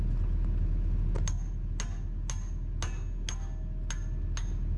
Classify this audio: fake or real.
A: real